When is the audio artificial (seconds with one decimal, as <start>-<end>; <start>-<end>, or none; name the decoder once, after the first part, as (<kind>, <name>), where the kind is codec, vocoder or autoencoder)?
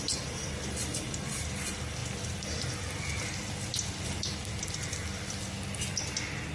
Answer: none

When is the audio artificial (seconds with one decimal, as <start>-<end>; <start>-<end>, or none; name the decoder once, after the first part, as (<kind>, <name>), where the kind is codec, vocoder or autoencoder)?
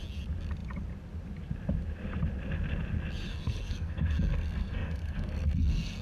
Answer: 3.3-6.0 (codec, SNAC)